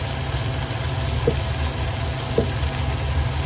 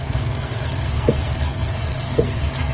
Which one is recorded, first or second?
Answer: first